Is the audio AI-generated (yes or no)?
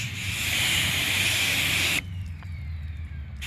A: yes